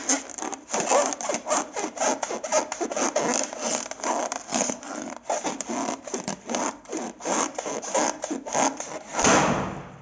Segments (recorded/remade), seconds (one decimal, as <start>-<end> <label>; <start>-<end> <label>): 0.0-4.5 recorded; 4.5-5.1 remade; 5.1-10.0 recorded